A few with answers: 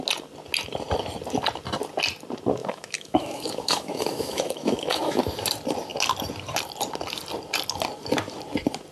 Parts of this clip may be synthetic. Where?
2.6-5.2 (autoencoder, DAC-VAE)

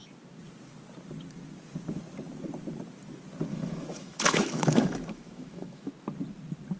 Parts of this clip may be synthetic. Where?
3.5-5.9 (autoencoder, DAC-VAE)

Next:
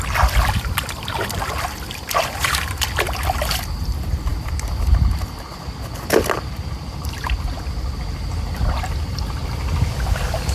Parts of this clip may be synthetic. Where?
none

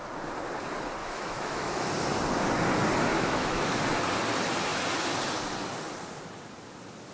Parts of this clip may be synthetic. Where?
1.0-1.9 (autoencoder, DAC-VAE); 3.1-3.8

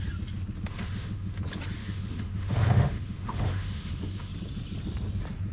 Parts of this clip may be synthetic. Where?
0.7-1.4 (autoencoder, DAC-VAE); 1.8-4.3

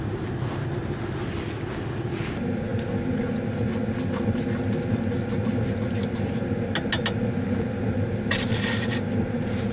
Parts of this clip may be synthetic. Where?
none

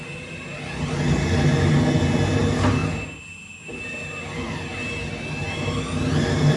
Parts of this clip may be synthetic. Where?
none